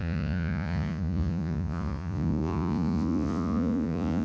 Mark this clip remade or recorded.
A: remade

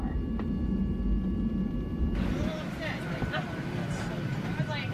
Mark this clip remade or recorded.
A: recorded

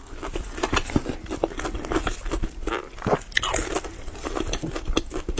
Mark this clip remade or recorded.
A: recorded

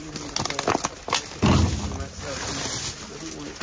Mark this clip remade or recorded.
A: recorded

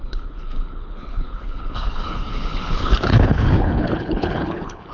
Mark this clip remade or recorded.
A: remade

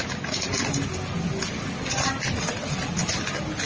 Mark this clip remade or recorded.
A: recorded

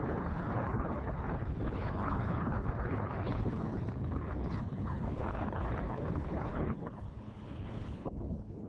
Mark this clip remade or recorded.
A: remade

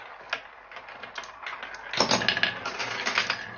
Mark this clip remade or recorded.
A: recorded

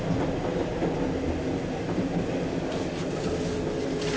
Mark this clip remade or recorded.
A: recorded